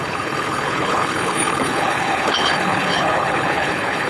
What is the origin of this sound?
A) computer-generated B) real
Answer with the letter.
A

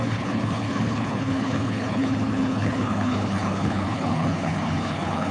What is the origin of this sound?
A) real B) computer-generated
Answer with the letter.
B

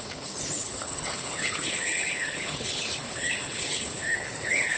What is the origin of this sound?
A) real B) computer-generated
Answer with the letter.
B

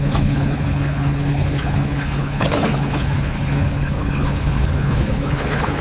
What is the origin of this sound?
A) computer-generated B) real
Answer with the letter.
A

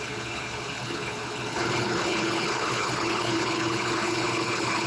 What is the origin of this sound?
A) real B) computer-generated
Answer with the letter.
B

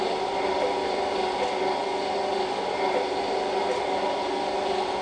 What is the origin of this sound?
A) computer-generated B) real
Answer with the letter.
B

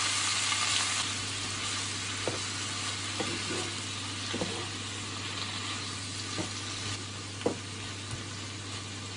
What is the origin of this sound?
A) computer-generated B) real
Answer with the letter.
B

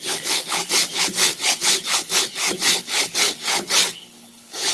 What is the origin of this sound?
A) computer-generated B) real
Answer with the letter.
A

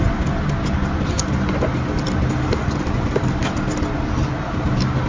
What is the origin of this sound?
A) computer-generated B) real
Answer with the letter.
B